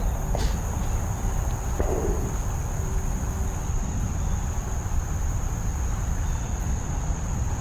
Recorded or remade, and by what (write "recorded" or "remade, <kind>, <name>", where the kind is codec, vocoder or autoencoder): recorded